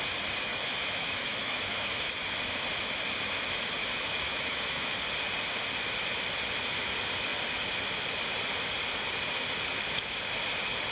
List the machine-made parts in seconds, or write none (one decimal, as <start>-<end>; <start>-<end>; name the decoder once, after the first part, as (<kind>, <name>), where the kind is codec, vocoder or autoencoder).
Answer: 0.5-2.1 (autoencoder, DAC-VAE); 3.8-4.9